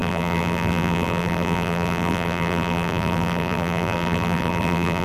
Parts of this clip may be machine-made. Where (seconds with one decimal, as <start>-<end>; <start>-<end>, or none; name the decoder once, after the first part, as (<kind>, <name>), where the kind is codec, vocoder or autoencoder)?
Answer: 0.0-5.0 (vocoder, BigVGAN v2)